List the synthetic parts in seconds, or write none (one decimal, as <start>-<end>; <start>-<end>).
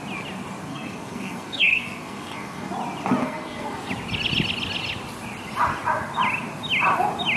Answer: 0.7-2.7; 3.2-3.9